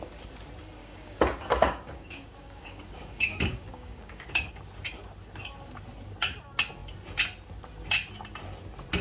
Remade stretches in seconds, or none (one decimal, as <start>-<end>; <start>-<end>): 0.8-4.5